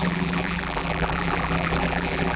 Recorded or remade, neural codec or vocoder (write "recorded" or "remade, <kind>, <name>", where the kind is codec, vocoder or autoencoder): remade, vocoder, BigVGAN v2